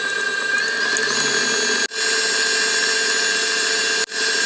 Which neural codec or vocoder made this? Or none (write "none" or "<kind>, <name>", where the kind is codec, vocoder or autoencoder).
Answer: none